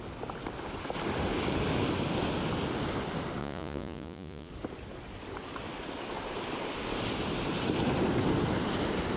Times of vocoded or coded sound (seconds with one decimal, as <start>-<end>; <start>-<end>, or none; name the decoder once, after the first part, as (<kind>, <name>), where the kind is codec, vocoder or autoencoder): 3.4-4.5 (vocoder, Vocos)